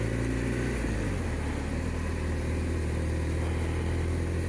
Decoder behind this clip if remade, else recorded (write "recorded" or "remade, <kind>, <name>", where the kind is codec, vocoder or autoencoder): recorded